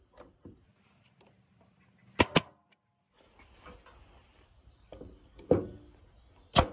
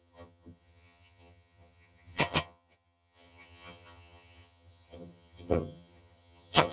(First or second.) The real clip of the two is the first